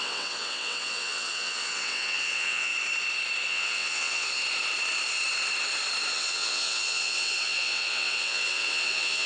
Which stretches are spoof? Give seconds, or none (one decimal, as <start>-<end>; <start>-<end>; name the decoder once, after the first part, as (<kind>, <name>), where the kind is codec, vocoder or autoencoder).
0.0-2.7 (vocoder, WaveNeXt); 3.5-4.4; 6.1-9.3